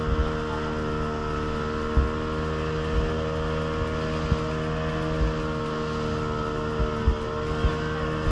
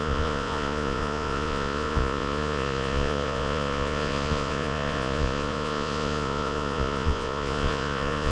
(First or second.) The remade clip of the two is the second